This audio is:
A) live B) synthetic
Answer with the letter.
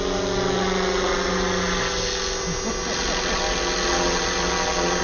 A